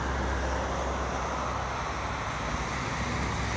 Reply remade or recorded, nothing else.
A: recorded